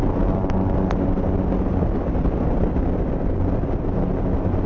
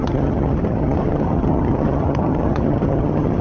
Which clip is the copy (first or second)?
second